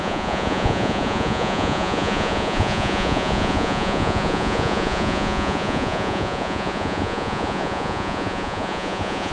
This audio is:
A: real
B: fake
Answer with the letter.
B